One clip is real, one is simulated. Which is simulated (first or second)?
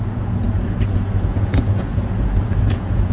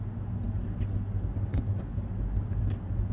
first